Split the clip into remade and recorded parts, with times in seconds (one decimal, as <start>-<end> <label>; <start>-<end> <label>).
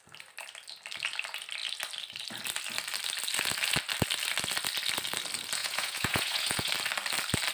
0.0-5.6 recorded; 5.6-6.7 remade; 6.7-7.5 recorded